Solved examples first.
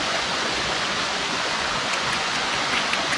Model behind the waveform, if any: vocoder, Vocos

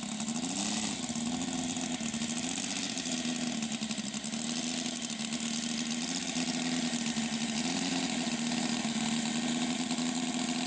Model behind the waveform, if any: none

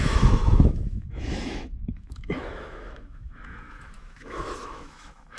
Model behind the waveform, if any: autoencoder, DAC-VAE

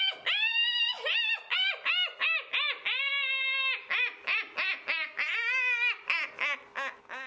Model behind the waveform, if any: none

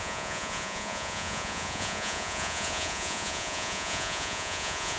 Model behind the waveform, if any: vocoder, Vocos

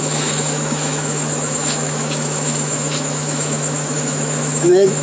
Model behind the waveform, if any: autoencoder, DAC-VAE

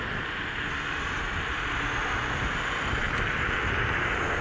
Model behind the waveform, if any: none